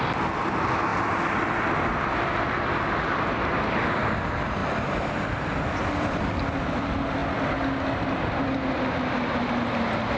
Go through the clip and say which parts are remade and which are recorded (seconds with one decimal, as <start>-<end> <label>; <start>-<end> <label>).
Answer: 0.0-4.6 recorded; 4.6-6.2 remade; 6.2-10.2 recorded